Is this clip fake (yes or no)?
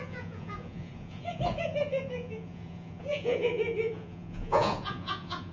yes